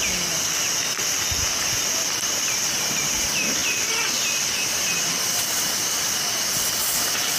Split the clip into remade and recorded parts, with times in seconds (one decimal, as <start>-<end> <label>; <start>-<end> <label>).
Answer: 0.0-7.4 recorded